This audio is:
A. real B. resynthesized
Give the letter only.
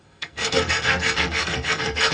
B